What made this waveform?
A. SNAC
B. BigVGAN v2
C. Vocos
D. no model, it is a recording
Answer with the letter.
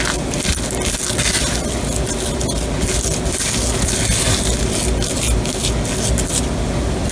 D